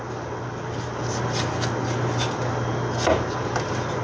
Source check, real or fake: real